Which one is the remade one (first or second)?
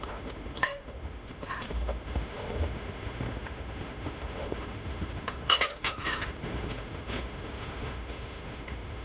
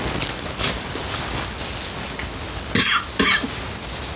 first